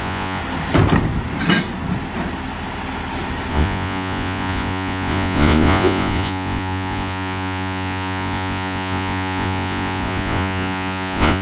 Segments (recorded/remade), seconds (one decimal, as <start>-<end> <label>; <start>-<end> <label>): 0.0-0.4 remade; 0.4-3.5 recorded; 3.5-11.4 remade